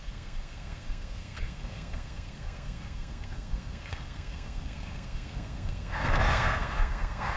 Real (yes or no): no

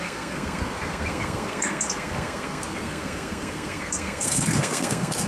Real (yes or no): no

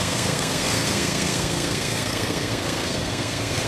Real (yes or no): no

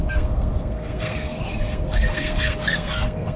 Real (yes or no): no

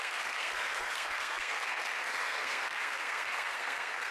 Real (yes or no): no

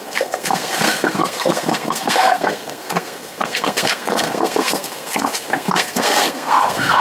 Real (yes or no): no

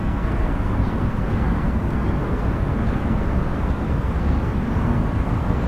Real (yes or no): no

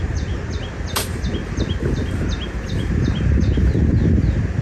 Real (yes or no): yes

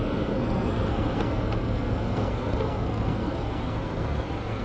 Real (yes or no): no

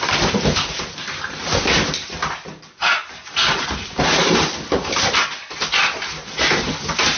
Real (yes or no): yes